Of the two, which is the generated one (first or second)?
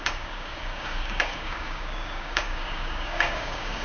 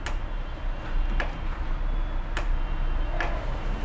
first